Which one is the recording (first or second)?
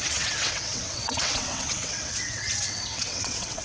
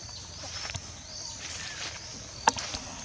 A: second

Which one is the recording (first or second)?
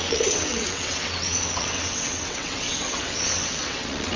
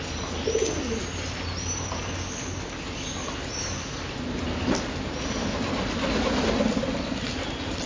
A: second